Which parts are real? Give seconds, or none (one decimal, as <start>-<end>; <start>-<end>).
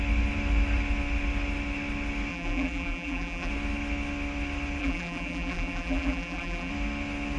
0.0-2.3; 3.5-4.8; 6.7-7.4